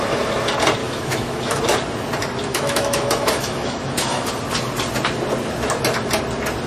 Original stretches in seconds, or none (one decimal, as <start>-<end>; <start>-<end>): 0.0-0.8; 1.6-2.5; 4.3-6.7